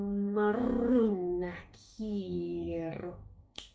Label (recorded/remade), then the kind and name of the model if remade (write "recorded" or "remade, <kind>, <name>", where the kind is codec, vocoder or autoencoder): remade, codec, DAC